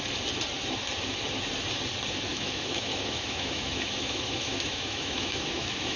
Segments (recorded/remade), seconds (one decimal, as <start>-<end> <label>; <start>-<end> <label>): 0.0-2.3 recorded; 2.3-6.0 remade